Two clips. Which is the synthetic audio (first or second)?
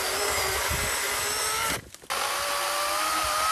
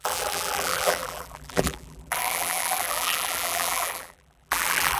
second